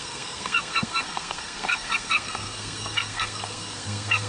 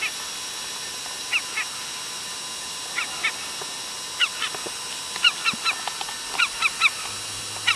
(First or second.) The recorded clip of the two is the second